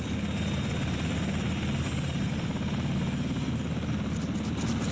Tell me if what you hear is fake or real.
real